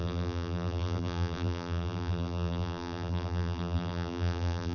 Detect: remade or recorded remade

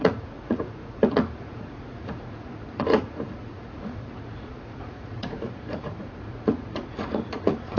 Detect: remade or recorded remade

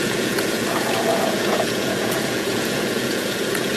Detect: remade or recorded remade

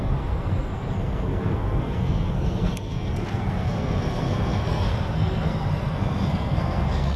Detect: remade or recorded remade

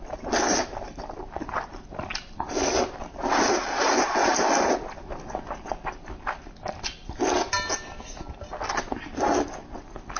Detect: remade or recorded recorded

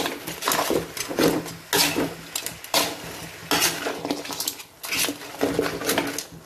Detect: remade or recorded recorded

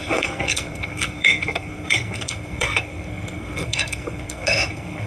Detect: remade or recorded remade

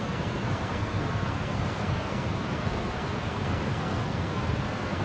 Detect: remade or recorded remade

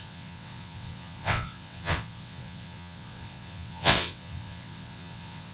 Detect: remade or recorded remade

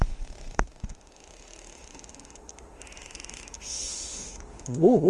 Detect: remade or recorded remade